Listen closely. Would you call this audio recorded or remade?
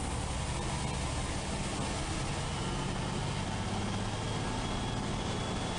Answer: recorded